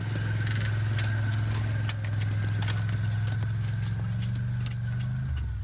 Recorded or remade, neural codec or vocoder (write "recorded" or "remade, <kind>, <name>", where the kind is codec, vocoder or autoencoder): recorded